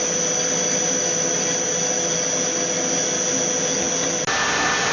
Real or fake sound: real